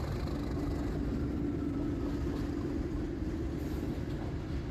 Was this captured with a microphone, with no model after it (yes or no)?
yes